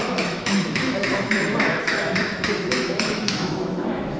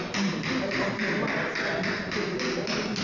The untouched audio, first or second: second